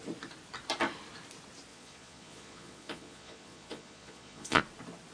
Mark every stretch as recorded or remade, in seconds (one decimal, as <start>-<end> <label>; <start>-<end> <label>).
0.0-1.7 recorded; 1.7-4.6 remade; 4.6-5.1 recorded